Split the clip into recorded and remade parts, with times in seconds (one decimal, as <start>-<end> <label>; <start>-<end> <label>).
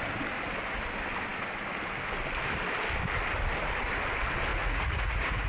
0.0-4.5 recorded; 4.5-5.5 remade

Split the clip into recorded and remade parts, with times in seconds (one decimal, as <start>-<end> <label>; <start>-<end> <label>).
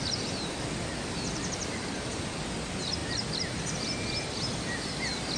0.0-5.4 recorded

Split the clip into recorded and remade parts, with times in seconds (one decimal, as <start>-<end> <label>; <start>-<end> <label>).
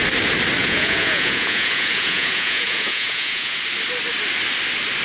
0.0-0.6 recorded; 0.6-3.6 remade; 3.6-5.0 recorded